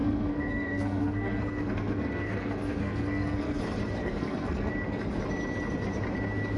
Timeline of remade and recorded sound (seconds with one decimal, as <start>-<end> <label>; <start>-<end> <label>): 0.0-3.6 remade; 3.6-4.0 recorded; 4.0-4.7 remade; 4.7-6.6 recorded